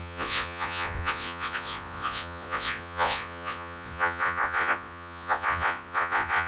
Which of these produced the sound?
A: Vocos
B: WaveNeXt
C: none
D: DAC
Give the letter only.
A